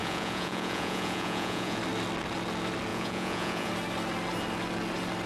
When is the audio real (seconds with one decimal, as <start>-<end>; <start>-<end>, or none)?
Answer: 1.8-2.9; 3.7-5.3